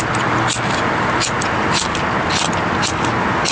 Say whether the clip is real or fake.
real